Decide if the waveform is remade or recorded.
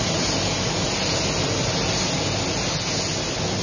recorded